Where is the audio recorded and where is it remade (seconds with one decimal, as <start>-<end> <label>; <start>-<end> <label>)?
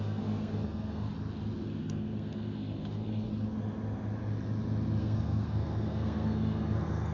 0.0-1.1 remade; 1.1-1.8 recorded; 1.8-3.3 remade; 3.3-5.0 recorded; 5.0-7.1 remade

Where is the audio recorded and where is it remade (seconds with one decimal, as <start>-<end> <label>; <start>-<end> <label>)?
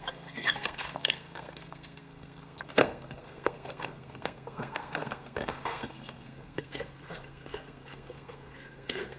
0.0-9.2 remade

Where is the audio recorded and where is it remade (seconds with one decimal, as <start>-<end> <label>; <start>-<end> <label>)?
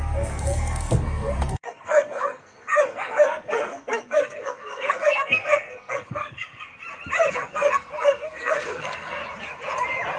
0.0-6.7 remade; 6.7-7.3 recorded; 7.3-9.2 remade; 9.2-10.2 recorded